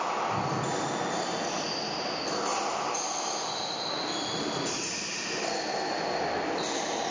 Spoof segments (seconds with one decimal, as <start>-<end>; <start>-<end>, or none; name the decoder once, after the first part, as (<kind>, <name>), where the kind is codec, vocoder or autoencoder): none